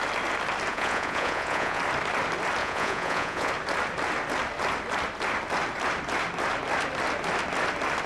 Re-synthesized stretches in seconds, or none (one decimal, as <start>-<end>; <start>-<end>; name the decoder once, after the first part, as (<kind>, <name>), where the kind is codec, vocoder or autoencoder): 0.7-1.8 (vocoder, Vocos); 2.6-3.5